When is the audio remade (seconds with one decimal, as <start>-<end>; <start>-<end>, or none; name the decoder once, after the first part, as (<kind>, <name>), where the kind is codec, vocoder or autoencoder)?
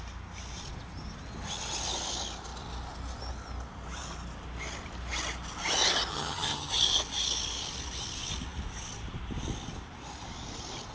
6.1-6.7 (vocoder, HiFi-GAN)